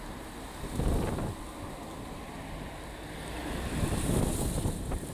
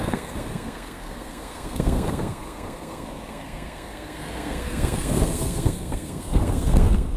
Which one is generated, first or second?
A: second